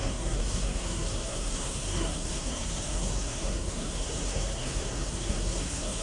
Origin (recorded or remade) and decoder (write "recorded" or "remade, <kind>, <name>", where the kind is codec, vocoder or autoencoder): remade, codec, SNAC